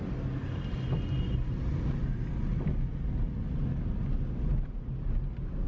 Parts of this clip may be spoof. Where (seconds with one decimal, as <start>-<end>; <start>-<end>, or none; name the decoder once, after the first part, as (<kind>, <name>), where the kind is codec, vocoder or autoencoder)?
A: none